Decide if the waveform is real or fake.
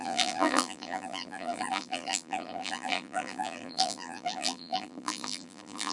fake